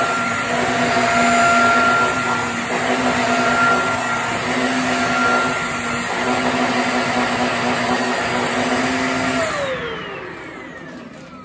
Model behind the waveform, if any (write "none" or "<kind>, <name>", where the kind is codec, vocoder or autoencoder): none